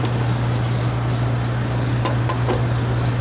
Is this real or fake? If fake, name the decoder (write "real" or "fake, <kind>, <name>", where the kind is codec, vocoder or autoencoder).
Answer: real